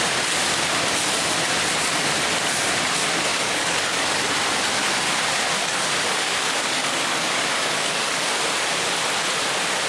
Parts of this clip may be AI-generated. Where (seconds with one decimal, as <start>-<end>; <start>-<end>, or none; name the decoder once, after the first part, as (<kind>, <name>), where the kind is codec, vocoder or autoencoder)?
3.3-4.0 (codec, DAC); 5.6-8.4